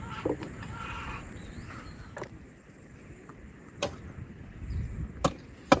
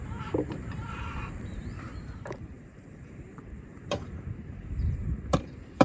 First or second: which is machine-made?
second